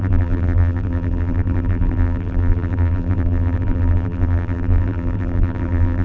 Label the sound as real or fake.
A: fake